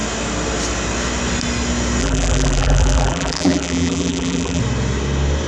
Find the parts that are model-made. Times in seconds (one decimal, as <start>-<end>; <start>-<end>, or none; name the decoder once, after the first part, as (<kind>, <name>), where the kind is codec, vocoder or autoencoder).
2.0-4.6 (vocoder, BigVGAN v2)